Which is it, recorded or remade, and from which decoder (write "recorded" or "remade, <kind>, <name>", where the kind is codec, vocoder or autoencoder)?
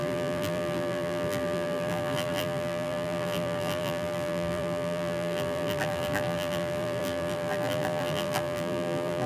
remade, vocoder, BigVGAN v2